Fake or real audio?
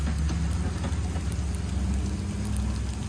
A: real